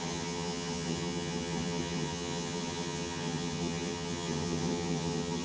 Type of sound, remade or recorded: remade